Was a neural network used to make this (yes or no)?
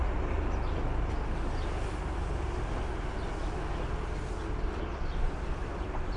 no